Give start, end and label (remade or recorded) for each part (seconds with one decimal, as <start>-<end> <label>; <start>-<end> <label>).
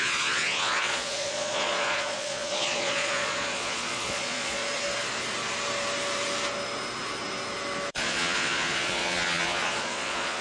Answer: 0.0-4.6 remade; 4.6-7.9 recorded; 7.9-10.4 remade